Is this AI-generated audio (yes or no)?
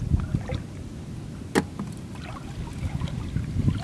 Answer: no